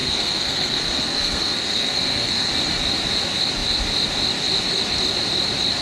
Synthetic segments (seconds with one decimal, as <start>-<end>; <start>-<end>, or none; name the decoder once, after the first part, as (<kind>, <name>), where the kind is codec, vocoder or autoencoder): 0.0-2.5 (codec, SNAC)